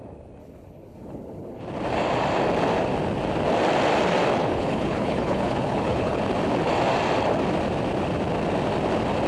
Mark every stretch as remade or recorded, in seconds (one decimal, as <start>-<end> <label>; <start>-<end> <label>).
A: 0.0-0.4 recorded; 0.4-1.6 remade; 1.6-4.4 recorded; 4.4-6.2 remade; 6.2-9.3 recorded